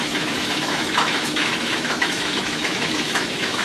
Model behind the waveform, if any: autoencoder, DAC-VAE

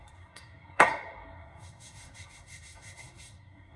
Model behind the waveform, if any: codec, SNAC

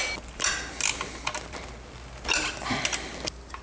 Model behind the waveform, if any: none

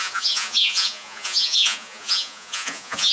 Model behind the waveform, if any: vocoder, Vocos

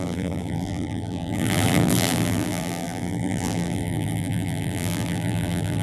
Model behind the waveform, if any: vocoder, BigVGAN v2